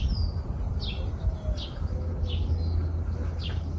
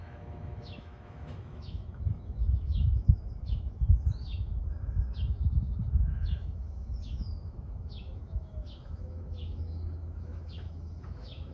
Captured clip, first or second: first